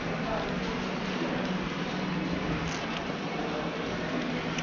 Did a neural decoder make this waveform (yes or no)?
no